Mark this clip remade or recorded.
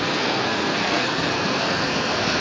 remade